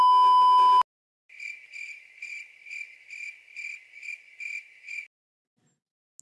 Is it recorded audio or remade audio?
recorded